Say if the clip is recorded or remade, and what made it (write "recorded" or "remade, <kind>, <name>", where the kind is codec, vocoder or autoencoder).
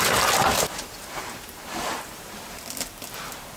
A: remade, vocoder, BigVGAN v2